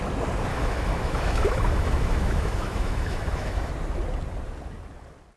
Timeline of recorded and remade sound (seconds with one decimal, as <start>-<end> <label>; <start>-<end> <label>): 0.0-0.5 recorded; 0.5-3.7 remade; 3.7-5.4 recorded